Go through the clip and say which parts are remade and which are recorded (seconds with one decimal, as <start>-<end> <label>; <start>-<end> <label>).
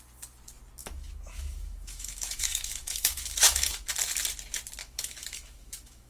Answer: 0.0-0.8 recorded; 0.8-3.9 remade; 3.9-4.8 recorded; 4.8-6.1 remade